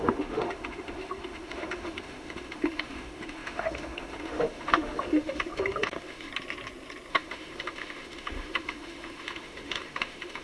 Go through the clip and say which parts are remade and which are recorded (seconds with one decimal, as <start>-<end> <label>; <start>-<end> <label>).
0.0-6.3 remade; 6.3-7.1 recorded; 7.1-10.4 remade